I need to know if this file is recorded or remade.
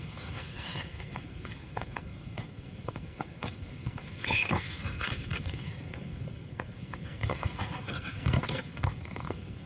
remade